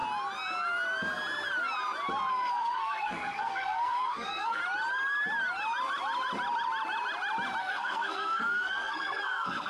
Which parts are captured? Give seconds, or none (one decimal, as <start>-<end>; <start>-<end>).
0.0-2.3; 4.6-7.6